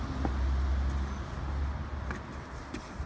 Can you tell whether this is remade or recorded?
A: recorded